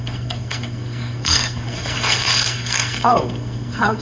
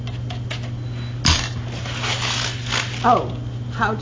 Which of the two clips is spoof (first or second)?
first